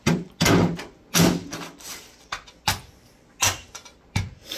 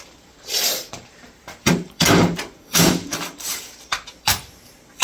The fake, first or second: second